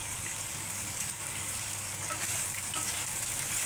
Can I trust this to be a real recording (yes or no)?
no